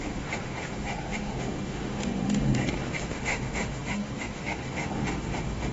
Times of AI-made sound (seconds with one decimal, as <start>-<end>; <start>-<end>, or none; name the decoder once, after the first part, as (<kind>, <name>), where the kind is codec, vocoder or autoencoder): 0.0-5.7 (autoencoder, DAC-VAE)